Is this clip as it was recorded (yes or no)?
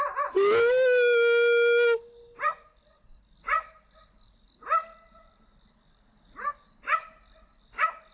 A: yes